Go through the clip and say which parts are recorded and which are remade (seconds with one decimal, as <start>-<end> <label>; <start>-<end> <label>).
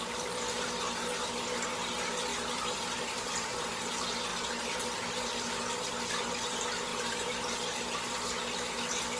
0.0-2.3 recorded; 2.3-3.9 remade; 3.9-9.2 recorded